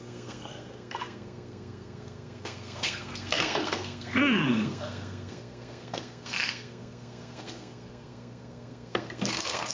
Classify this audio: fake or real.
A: fake